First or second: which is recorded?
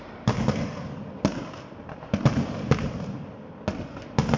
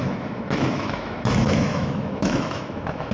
first